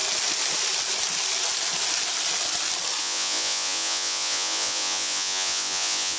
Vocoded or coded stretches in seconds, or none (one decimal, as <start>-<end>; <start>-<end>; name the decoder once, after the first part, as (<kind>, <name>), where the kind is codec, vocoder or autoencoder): 3.0-6.2 (vocoder, Vocos)